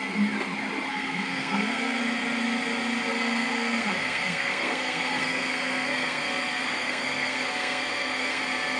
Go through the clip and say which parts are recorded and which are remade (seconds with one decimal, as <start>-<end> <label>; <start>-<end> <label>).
0.0-0.9 recorded; 0.9-2.0 remade; 2.0-3.1 recorded; 3.1-8.4 remade; 8.4-8.8 recorded

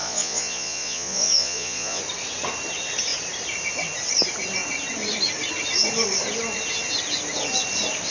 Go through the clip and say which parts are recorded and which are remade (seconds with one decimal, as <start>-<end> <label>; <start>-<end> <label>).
0.0-2.0 remade; 2.0-8.1 recorded

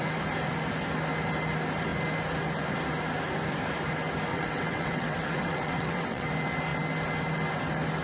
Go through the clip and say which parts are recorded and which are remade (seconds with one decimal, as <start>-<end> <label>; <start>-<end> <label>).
0.0-4.3 recorded; 4.3-6.3 remade; 6.3-8.0 recorded

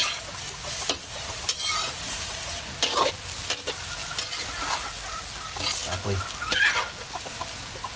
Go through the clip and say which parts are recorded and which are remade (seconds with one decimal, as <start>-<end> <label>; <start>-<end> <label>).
0.0-8.0 recorded

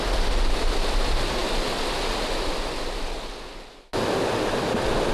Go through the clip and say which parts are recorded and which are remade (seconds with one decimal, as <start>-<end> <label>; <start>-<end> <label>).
0.0-5.1 recorded

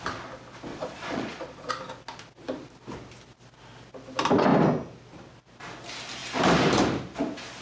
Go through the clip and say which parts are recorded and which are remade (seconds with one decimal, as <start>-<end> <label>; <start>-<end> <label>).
0.0-0.7 recorded; 0.7-1.7 remade; 1.7-7.6 recorded

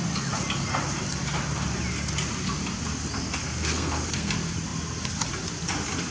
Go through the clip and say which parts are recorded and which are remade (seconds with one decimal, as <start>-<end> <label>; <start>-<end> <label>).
0.0-3.4 recorded; 3.4-4.3 remade; 4.3-6.1 recorded

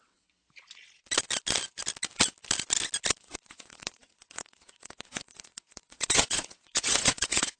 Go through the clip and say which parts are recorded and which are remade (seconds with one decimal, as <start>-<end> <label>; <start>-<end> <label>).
0.0-0.4 remade; 0.4-3.2 recorded; 3.2-7.6 remade